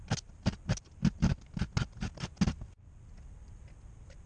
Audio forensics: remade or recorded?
recorded